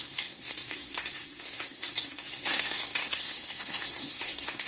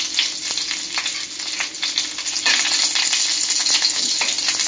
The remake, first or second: first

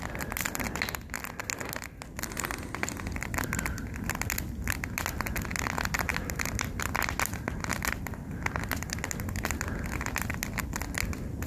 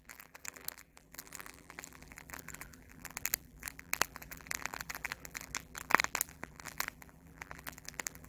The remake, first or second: second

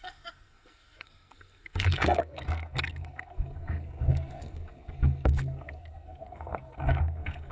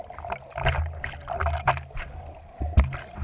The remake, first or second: first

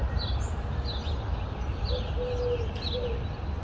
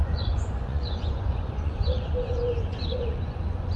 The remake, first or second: second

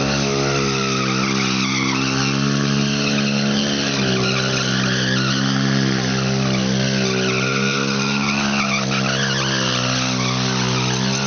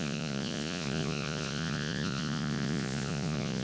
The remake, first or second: second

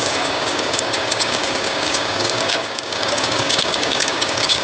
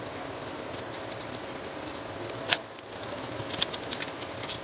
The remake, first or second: first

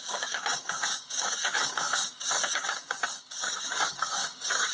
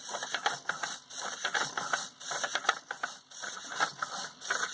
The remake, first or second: first